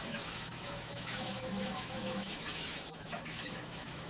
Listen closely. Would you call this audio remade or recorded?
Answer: remade